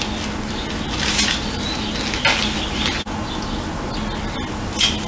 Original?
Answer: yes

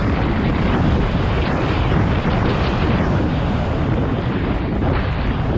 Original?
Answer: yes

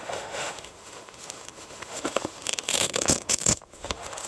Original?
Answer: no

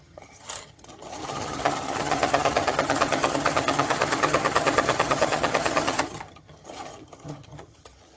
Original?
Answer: no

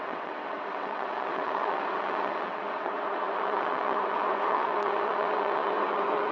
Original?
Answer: no